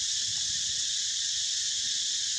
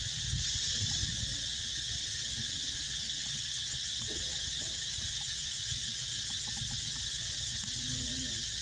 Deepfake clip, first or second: second